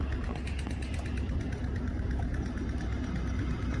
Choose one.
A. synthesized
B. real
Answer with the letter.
B